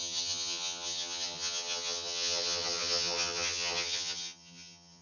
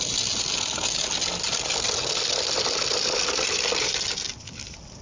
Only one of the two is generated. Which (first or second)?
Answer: first